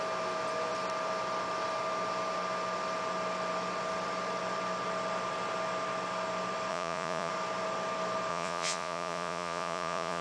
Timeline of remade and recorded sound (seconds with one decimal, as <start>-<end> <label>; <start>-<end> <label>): 0.0-6.7 recorded; 6.7-7.3 remade; 7.3-8.3 recorded; 8.3-10.2 remade

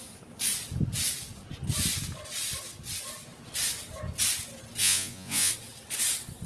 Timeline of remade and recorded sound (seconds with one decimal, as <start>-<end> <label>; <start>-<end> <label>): 0.0-4.8 recorded; 4.8-5.5 remade; 5.5-6.5 recorded